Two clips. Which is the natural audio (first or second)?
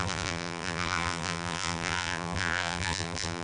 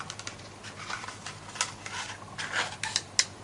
second